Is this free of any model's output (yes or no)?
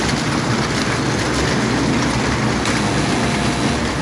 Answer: yes